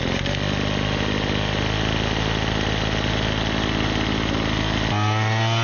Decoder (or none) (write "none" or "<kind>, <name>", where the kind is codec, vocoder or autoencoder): none